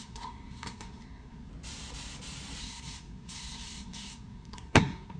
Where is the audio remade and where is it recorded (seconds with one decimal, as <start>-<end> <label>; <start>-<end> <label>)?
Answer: 0.0-1.5 remade; 1.5-2.6 recorded; 2.6-5.2 remade